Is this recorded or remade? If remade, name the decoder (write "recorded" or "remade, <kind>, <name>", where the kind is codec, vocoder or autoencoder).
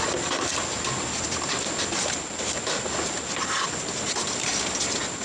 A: recorded